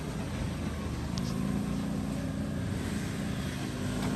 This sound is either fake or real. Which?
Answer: real